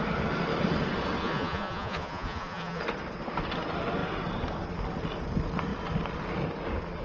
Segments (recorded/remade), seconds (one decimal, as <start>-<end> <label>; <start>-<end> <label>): 0.0-1.2 recorded; 1.2-2.8 remade; 2.8-7.0 recorded